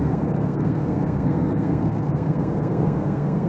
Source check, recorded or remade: remade